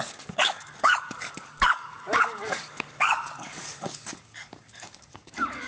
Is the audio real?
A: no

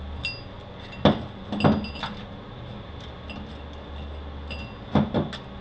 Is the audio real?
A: yes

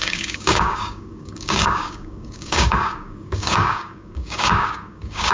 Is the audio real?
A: no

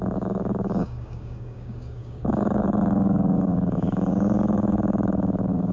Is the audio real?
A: no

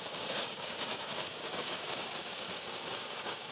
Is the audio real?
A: no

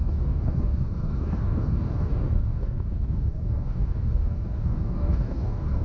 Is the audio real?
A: no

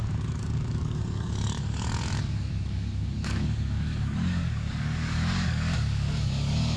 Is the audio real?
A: no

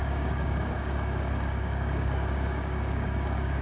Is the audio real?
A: no